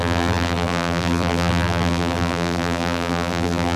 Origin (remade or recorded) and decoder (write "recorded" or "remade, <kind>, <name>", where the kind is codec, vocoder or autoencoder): remade, vocoder, BigVGAN v2